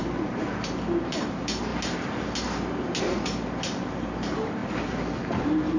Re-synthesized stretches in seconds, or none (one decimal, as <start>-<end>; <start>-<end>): 0.0-1.7; 3.0-5.8